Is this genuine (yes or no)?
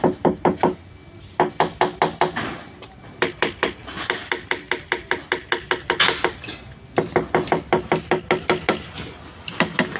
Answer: yes